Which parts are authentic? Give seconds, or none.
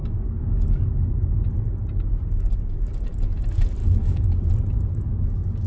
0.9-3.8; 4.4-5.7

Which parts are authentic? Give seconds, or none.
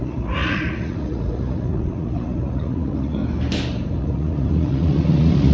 3.2-3.9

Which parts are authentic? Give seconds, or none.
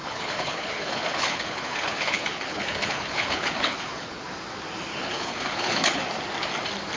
4.2-4.9; 6.0-7.0